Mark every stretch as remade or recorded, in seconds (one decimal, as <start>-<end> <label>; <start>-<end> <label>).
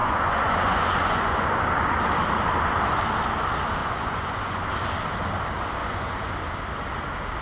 0.0-1.6 remade; 1.6-3.8 recorded; 3.8-4.6 remade; 4.6-5.8 recorded; 5.8-6.3 remade; 6.3-7.4 recorded